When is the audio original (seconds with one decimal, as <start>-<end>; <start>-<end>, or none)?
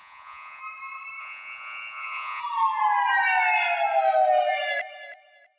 0.6-1.2; 2.4-5.6